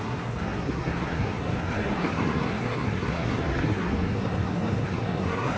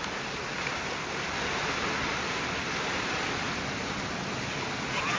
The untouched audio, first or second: second